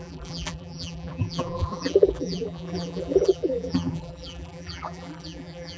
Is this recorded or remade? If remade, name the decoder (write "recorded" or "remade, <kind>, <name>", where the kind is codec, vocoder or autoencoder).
remade, vocoder, BigVGAN v2